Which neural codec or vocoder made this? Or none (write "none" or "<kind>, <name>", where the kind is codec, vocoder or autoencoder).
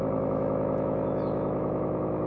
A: autoencoder, DAC-VAE